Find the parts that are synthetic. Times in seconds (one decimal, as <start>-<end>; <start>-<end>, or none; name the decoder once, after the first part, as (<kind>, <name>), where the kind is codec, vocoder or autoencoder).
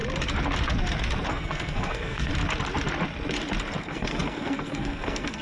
1.3-2.3 (codec, SNAC); 3.8-5.4